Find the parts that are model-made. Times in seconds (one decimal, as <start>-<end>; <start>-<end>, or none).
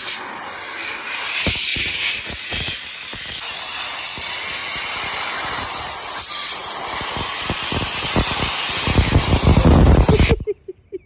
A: 1.7-2.7